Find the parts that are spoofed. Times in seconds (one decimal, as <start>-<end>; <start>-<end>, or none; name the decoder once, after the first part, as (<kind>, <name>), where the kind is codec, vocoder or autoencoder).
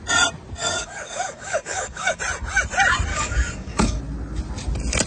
0.6-2.2 (codec, DAC); 3.1-4.0